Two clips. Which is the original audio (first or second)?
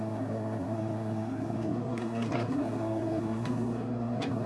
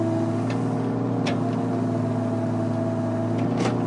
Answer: second